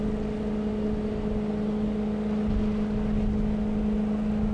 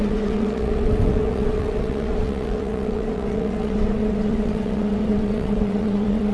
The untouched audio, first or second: first